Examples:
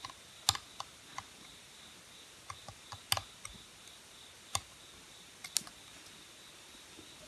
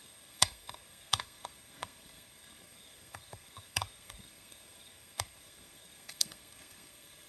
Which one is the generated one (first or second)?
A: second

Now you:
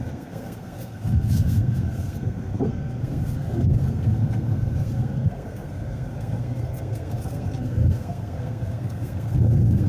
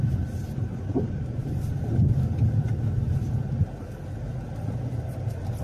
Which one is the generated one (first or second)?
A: first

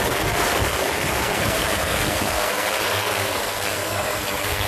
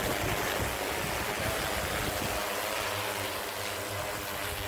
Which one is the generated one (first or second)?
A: first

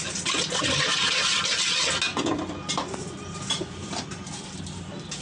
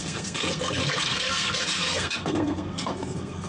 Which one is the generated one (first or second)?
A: second